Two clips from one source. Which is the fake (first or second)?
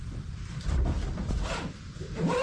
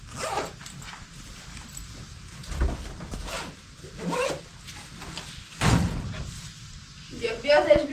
first